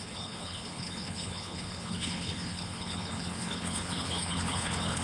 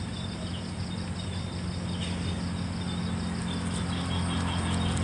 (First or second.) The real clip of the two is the second